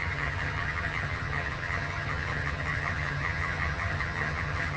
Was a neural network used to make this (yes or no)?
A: yes